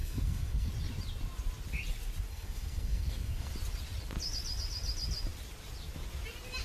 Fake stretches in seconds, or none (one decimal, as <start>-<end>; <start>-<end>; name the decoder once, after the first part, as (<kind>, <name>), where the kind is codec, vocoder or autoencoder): 0.0-0.7 (codec, SNAC); 2.3-3.5